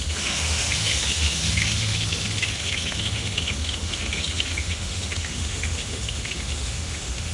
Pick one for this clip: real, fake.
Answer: fake